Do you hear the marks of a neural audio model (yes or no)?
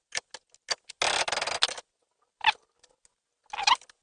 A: no